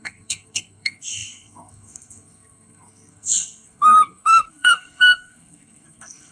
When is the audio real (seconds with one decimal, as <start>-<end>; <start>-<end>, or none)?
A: none